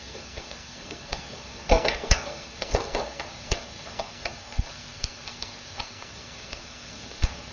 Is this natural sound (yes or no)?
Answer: no